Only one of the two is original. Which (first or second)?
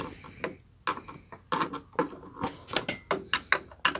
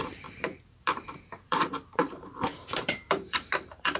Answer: first